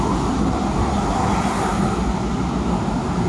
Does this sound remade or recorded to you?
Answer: recorded